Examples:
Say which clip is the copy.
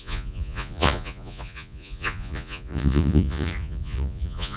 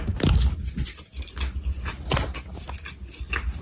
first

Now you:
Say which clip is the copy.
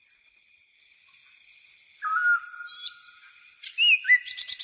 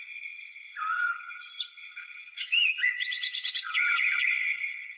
second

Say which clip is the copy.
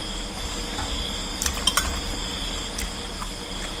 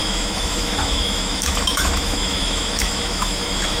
second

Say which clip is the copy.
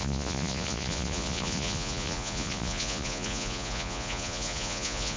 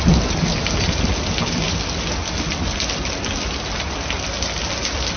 first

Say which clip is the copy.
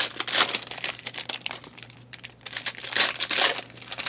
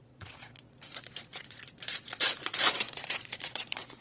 second